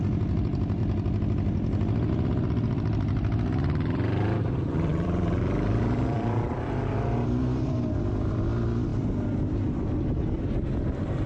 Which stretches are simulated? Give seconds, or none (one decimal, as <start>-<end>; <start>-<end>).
0.0-0.8; 2.1-8.9; 10.5-11.3